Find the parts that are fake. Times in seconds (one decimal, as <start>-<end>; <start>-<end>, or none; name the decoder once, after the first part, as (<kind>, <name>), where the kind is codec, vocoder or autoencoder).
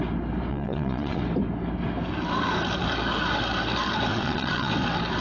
0.5-1.2 (vocoder, Vocos); 4.1-4.7